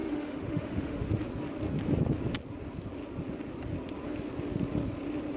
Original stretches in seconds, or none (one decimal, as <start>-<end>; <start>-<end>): 1.1-5.4